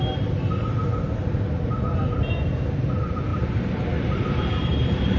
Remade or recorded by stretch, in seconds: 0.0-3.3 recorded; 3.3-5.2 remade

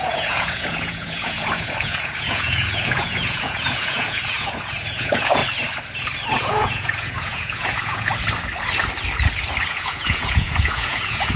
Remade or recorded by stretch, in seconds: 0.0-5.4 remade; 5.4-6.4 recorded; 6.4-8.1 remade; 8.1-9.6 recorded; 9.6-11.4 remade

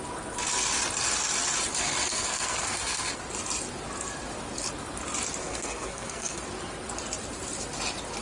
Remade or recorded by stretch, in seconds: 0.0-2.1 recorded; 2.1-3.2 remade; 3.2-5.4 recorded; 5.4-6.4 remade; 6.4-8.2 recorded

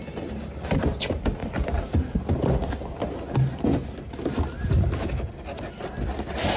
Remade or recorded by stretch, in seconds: 0.0-6.6 recorded

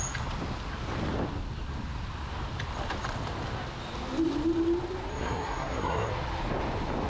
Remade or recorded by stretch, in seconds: 0.0-5.1 recorded; 5.1-6.1 remade; 6.1-7.1 recorded

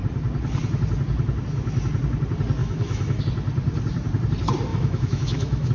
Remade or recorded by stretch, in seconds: 0.0-2.6 recorded; 2.6-3.2 remade; 3.2-4.7 recorded; 4.7-5.7 remade